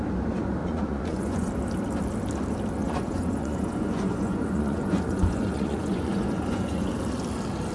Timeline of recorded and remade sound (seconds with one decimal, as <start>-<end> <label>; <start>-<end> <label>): 0.0-0.6 recorded; 0.6-1.5 remade; 1.5-2.8 recorded; 2.8-6.9 remade; 6.9-7.7 recorded